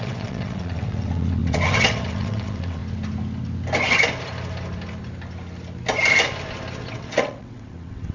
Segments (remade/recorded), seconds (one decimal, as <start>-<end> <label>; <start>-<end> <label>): 0.0-2.8 remade; 2.8-6.9 recorded; 6.9-8.1 remade